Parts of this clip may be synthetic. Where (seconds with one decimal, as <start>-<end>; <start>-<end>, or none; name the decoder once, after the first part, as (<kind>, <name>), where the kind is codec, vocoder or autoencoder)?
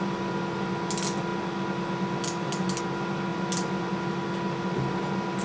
none